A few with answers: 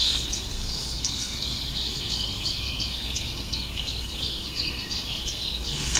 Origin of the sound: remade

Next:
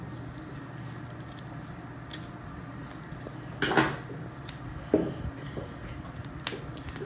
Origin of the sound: recorded